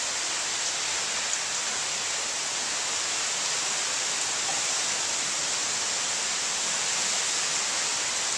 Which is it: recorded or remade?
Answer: recorded